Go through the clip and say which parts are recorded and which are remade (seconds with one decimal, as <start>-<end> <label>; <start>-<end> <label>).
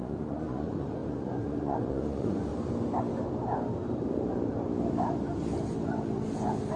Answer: 0.0-2.5 remade; 2.5-6.8 recorded